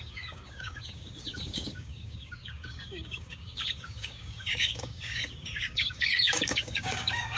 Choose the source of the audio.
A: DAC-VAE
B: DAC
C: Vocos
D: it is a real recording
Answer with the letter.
B